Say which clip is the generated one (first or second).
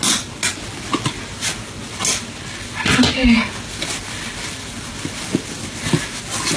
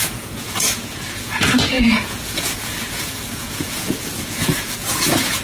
second